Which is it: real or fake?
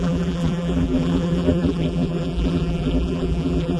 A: fake